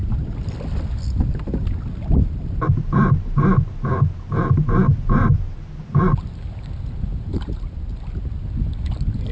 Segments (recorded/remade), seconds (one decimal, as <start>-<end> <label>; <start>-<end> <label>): 0.0-7.3 recorded; 7.3-7.9 remade; 7.9-9.3 recorded